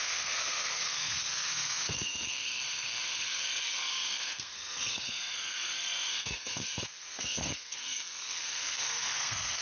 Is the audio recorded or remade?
remade